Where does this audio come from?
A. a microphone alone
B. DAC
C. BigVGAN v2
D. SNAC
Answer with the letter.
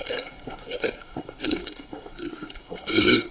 D